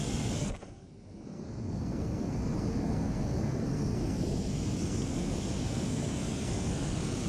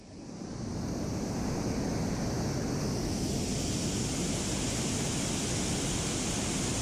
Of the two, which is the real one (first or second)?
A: second